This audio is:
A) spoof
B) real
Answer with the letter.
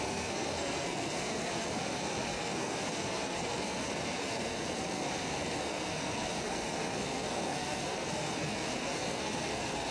A